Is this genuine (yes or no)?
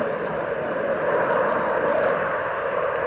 no